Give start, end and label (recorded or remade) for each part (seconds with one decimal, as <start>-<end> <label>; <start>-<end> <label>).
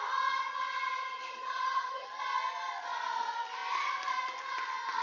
0.0-0.5 recorded; 0.5-2.2 remade; 2.2-5.0 recorded